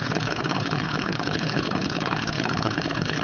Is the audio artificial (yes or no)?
yes